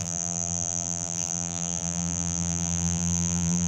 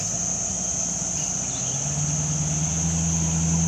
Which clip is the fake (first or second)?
first